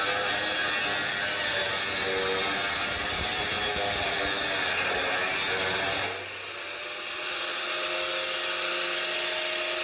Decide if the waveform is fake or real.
real